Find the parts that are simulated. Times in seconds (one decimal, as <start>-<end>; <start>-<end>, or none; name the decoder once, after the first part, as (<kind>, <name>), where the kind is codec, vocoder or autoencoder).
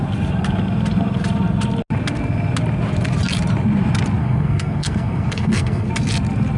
4.2-5.9 (codec, SNAC)